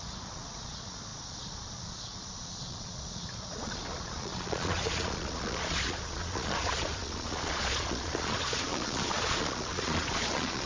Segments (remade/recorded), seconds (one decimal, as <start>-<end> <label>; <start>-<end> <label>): 0.0-10.7 remade